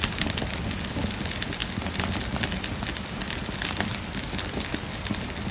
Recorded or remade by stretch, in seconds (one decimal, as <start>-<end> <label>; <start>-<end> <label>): 0.0-5.5 recorded